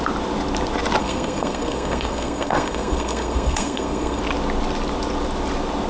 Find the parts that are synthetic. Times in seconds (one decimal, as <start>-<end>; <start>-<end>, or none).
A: 1.0-4.2